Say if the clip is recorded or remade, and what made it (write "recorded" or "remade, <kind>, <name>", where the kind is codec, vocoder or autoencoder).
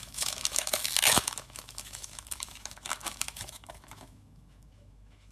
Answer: remade, autoencoder, DAC-VAE